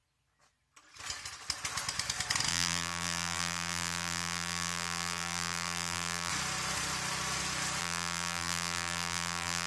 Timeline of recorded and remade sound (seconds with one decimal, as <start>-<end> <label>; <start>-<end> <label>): 0.0-2.5 recorded; 2.5-6.3 remade; 6.3-7.8 recorded; 7.8-9.7 remade